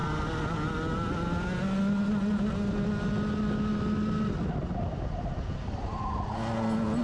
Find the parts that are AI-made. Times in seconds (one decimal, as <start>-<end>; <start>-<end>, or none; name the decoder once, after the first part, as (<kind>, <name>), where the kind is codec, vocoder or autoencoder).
none